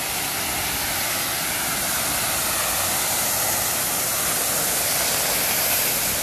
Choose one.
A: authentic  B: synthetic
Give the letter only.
A